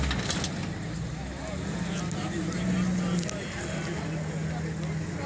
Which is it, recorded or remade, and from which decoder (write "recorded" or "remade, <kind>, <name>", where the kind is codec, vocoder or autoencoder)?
recorded